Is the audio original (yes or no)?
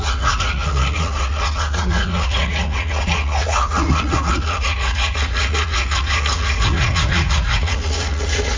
no